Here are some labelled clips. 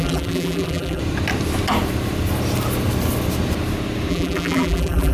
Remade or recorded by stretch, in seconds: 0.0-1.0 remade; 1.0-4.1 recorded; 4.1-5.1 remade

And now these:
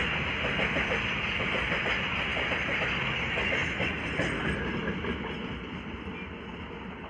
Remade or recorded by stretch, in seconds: 0.0-7.1 recorded

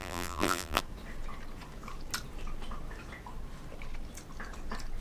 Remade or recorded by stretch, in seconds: 0.0-0.8 remade; 0.8-5.0 recorded